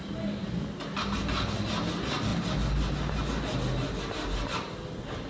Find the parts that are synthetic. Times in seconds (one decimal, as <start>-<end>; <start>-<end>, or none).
none